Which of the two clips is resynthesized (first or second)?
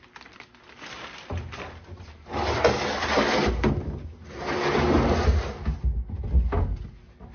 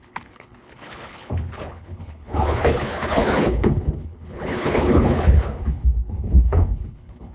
second